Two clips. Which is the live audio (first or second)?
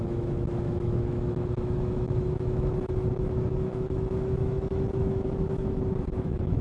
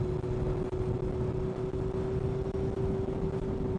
second